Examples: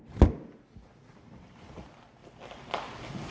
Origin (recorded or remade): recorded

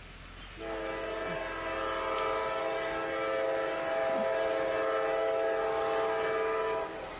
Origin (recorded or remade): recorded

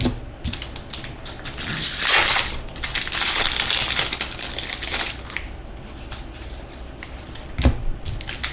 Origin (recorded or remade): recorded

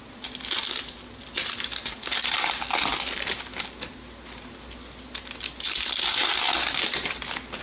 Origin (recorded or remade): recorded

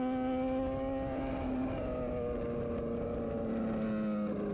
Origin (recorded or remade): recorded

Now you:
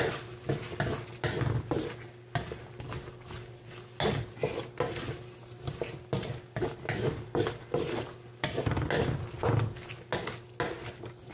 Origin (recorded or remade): recorded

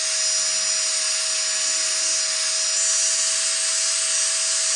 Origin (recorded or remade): recorded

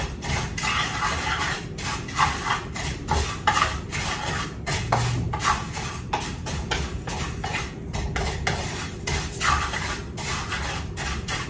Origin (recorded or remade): recorded